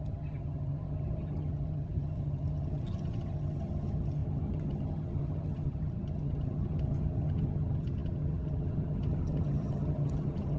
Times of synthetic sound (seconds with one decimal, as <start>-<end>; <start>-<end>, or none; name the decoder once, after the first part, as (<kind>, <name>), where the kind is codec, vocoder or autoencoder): 0.0-10.6 (vocoder, HiFi-GAN)